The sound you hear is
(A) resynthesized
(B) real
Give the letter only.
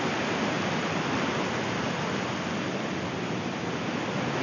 B